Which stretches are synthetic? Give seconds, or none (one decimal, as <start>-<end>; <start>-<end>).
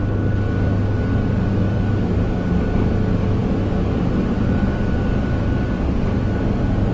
none